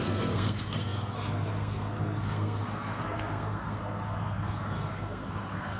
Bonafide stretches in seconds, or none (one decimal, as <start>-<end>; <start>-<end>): none